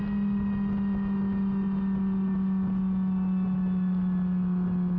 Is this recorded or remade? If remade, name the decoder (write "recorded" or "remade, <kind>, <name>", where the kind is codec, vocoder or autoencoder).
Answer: recorded